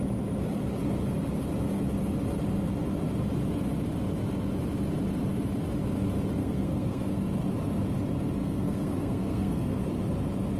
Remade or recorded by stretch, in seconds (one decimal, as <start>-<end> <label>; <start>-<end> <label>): 0.0-6.4 recorded; 6.4-7.2 remade; 7.2-8.4 recorded; 8.4-9.8 remade; 9.8-10.6 recorded